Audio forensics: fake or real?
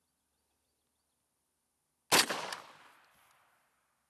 real